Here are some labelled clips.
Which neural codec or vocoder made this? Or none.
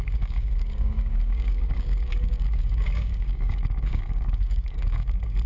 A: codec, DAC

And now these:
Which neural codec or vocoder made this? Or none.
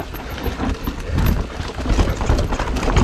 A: none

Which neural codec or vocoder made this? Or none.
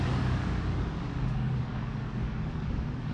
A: codec, DAC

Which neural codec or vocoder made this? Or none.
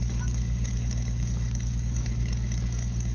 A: codec, DAC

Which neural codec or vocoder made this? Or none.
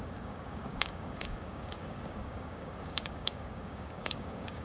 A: codec, DAC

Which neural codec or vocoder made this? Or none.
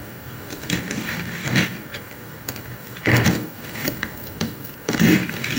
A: codec, DAC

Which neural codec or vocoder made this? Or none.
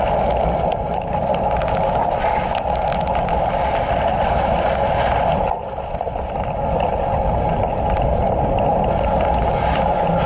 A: none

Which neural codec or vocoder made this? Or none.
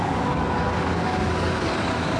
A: codec, DAC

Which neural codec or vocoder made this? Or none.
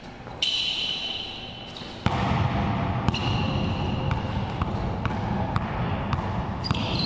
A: none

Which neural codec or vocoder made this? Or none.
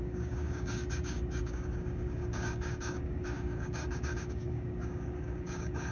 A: codec, DAC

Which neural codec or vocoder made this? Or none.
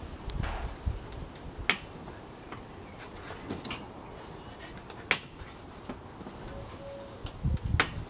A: none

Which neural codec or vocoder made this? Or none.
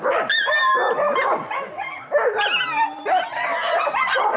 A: none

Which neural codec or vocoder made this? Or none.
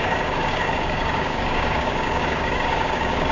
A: codec, DAC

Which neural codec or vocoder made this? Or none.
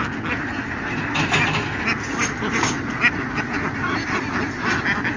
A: none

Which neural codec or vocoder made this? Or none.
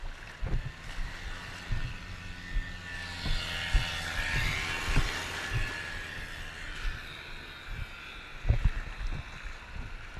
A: none